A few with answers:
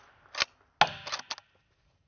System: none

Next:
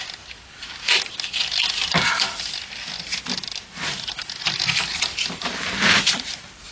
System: none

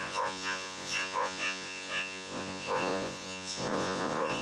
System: vocoder, Vocos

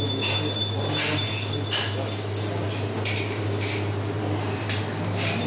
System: none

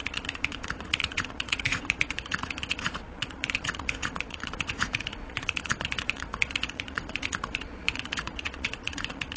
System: vocoder, Vocos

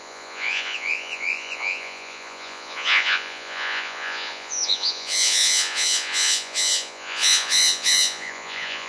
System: vocoder, Vocos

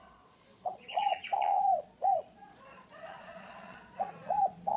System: vocoder, Vocos